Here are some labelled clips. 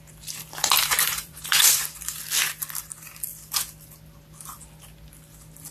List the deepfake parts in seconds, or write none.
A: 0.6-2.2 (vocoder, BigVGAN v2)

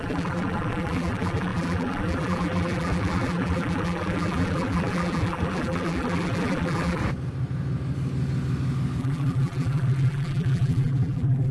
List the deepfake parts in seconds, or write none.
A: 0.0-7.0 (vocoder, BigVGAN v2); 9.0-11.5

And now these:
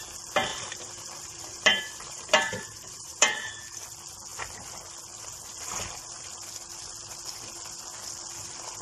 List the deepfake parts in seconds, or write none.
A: 0.5-3.5 (vocoder, BigVGAN v2)

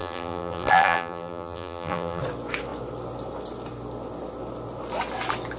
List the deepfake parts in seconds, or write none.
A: 0.0-2.2 (vocoder, BigVGAN v2)

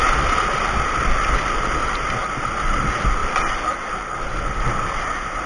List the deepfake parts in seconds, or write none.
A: 0.0-3.2 (vocoder, BigVGAN v2); 3.9-5.5

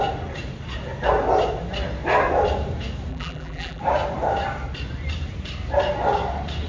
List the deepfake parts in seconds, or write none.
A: 3.1-3.8 (vocoder, BigVGAN v2)

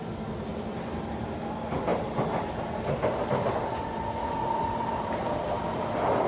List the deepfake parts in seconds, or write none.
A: 0.5-1.4 (vocoder, BigVGAN v2)